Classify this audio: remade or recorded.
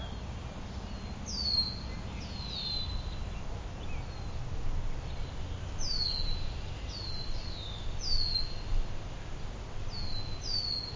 recorded